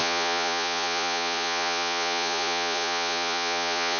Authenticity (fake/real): fake